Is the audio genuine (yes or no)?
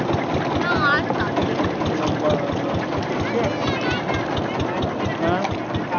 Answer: yes